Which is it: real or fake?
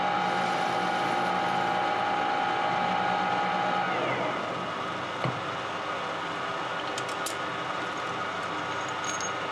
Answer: real